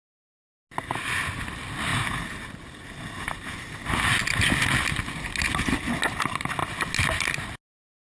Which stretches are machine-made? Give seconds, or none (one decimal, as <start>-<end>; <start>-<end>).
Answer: none

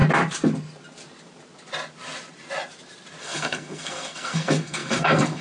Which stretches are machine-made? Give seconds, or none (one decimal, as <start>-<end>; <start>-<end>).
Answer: 3.2-5.4

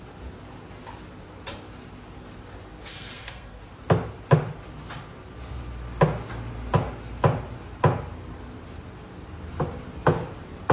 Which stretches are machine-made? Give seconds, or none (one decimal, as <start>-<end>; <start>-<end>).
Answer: 2.9-3.6

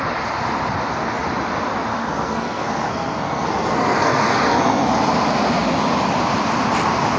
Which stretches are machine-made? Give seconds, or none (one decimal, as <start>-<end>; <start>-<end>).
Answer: 1.9-4.9

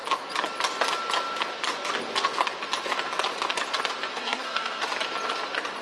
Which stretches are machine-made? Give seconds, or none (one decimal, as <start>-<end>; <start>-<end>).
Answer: 4.1-4.8

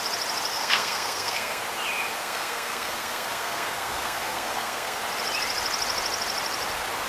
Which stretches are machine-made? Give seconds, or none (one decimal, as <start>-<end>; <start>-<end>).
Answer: 0.5-1.6; 2.2-5.0